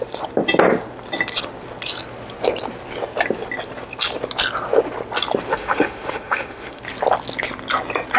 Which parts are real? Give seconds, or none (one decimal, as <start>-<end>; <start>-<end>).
0.0-5.5; 6.8-8.2